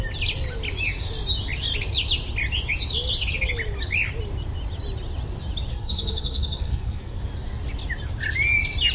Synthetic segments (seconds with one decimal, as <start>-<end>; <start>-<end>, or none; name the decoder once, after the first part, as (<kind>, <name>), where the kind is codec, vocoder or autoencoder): 5.7-7.2 (codec, SNAC)